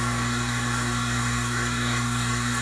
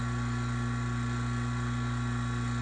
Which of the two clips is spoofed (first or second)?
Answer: first